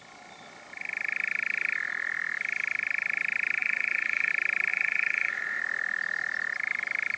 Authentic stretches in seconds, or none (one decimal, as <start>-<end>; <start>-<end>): 0.0-3.6; 4.3-4.7; 5.6-7.2